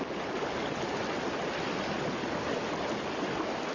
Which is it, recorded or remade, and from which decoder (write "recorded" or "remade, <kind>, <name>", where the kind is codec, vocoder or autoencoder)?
recorded